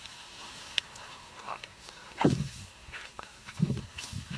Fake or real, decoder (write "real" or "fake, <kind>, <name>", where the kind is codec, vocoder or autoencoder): fake, codec, SNAC